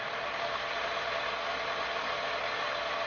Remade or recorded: recorded